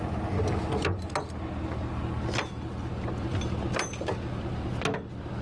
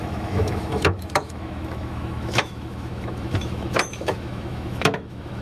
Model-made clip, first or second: second